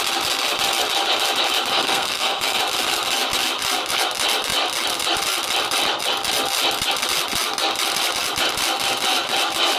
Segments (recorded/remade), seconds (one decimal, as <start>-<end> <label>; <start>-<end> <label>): 0.0-1.7 recorded; 1.7-2.6 remade; 2.6-9.8 recorded